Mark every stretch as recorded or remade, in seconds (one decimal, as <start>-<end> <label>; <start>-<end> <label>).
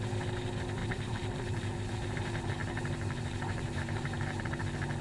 0.0-0.8 recorded; 0.8-2.2 remade; 2.2-2.6 recorded; 2.6-4.6 remade; 4.6-5.0 recorded